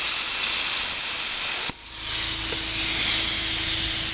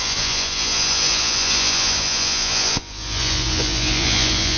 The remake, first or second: second